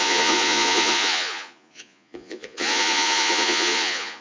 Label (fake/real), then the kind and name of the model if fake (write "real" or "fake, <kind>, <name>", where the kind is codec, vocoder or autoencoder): fake, vocoder, Vocos